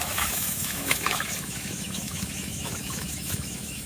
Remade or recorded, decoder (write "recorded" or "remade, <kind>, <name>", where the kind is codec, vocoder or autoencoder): remade, autoencoder, DAC-VAE